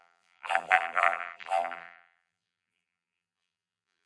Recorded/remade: remade